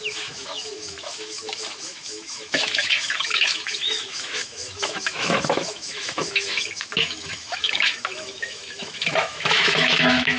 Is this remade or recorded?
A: remade